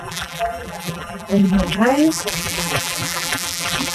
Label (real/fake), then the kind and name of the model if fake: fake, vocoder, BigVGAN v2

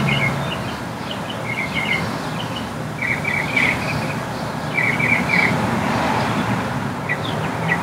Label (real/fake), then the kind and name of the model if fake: real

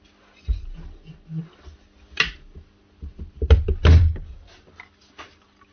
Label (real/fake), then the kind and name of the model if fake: real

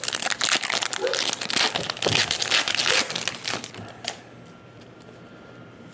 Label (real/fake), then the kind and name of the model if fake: real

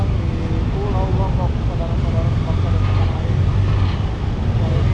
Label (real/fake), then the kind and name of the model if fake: real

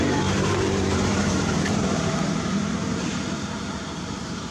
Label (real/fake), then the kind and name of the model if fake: fake, vocoder, BigVGAN v2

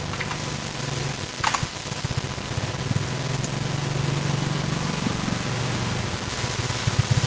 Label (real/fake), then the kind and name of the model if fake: real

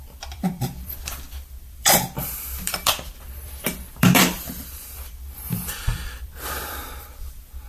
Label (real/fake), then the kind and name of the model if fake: fake, vocoder, BigVGAN v2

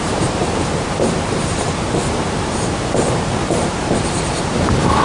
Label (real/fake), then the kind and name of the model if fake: fake, vocoder, BigVGAN v2